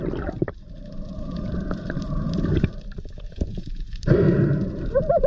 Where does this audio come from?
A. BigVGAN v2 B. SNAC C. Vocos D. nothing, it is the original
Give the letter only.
A